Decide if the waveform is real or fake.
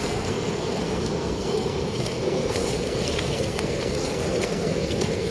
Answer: fake